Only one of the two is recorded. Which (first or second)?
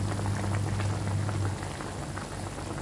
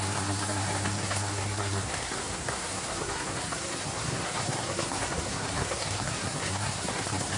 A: first